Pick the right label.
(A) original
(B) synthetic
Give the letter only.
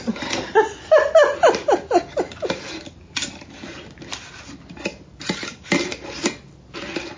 A